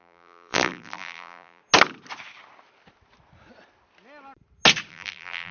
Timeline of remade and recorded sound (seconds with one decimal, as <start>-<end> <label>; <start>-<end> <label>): 0.0-1.6 remade; 1.6-4.9 recorded; 4.9-5.5 remade